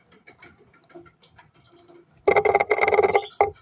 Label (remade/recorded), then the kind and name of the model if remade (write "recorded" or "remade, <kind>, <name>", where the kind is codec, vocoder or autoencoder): recorded